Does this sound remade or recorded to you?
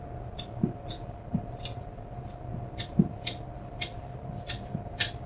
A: recorded